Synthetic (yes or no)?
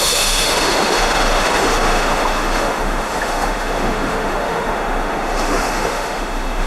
yes